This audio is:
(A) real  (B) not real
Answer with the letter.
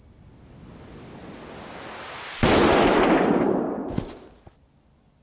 A